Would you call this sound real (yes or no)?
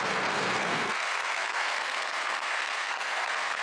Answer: no